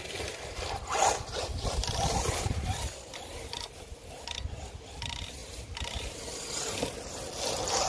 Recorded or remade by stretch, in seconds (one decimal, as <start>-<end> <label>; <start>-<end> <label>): 0.0-5.4 recorded; 5.4-6.8 remade; 6.8-7.9 recorded